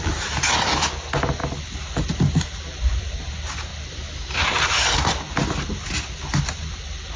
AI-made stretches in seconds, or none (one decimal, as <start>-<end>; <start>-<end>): none